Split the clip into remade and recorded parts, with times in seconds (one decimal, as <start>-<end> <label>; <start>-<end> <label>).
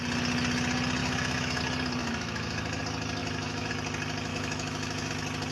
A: 0.0-1.0 recorded; 1.0-1.6 remade; 1.6-2.0 recorded; 2.0-2.8 remade; 2.8-3.2 recorded; 3.2-3.7 remade; 3.7-4.3 recorded; 4.3-5.1 remade; 5.1-5.5 recorded